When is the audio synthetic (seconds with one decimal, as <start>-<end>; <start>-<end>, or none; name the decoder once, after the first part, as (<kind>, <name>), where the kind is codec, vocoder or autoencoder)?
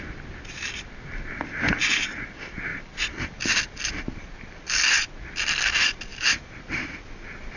2.7-3.6 (vocoder, BigVGAN v2); 6.1-6.9